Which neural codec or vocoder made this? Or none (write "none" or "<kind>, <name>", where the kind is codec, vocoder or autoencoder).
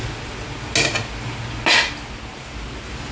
none